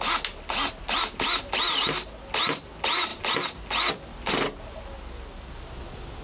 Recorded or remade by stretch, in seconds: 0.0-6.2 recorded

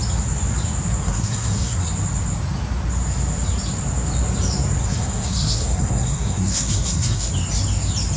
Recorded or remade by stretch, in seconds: 0.0-1.0 recorded; 1.0-1.9 remade; 1.9-4.8 recorded; 4.8-7.3 remade; 7.3-8.2 recorded